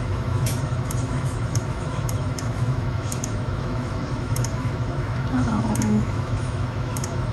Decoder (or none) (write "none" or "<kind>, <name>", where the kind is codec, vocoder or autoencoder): autoencoder, DAC-VAE